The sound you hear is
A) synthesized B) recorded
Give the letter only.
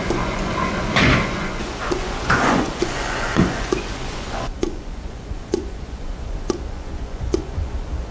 A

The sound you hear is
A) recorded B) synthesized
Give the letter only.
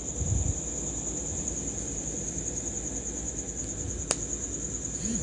A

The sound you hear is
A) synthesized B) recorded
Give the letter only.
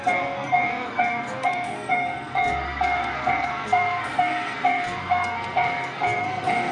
A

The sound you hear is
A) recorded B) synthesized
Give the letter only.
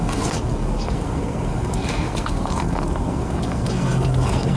B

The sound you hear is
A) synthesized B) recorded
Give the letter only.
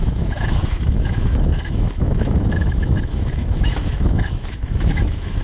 A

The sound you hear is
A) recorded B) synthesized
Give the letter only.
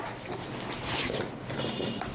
A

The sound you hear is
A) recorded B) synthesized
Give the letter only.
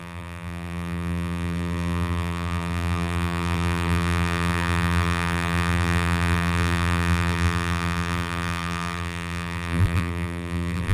B